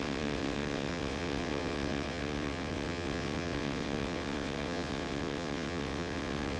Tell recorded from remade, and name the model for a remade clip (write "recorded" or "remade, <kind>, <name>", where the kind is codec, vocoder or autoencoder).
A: remade, vocoder, WaveNeXt